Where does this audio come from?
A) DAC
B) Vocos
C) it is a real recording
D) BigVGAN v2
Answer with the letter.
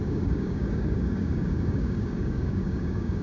A